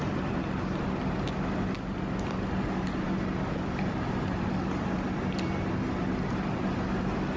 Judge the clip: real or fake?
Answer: real